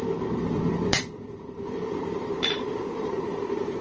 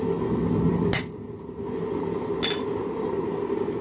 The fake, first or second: first